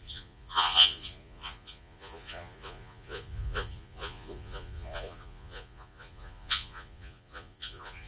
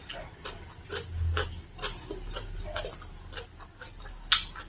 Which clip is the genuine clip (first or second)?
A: second